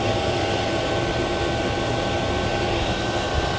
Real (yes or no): yes